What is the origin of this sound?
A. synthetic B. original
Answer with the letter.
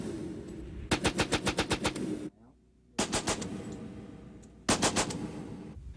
B